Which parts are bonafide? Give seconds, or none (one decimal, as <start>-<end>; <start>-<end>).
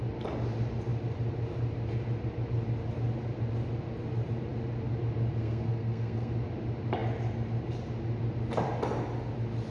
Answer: 0.0-5.4; 6.3-9.7